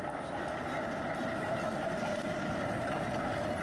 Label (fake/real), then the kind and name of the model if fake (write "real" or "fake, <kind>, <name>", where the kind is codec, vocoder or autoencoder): real